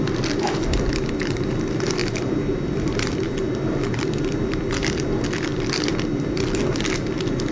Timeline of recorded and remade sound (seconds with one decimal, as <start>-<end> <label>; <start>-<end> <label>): 0.0-5.5 recorded; 5.5-6.2 remade; 6.2-7.5 recorded